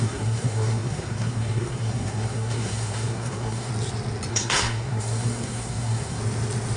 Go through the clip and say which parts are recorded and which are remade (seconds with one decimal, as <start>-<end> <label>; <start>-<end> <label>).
0.0-3.7 remade; 3.7-4.3 recorded; 4.3-6.2 remade; 6.2-6.8 recorded

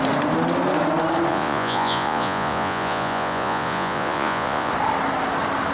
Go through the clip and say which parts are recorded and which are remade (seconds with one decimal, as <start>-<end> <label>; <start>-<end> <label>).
0.0-1.3 recorded; 1.3-4.7 remade; 4.7-5.7 recorded

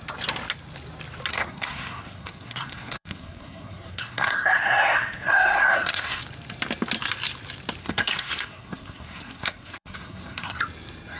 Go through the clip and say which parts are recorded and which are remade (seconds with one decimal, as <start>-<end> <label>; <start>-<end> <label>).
0.0-1.3 recorded; 1.3-6.2 remade; 6.2-7.8 recorded; 7.8-10.6 remade; 10.6-11.2 recorded

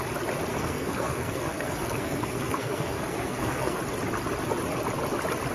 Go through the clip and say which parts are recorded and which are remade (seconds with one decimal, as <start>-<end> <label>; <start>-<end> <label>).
0.0-0.5 recorded; 0.5-3.8 remade; 3.8-5.5 recorded